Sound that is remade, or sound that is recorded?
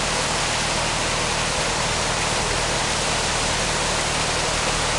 remade